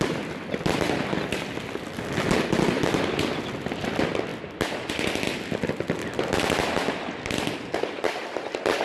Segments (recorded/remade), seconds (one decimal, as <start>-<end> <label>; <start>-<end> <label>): 0.0-8.8 recorded